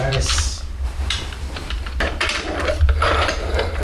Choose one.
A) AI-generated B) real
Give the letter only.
A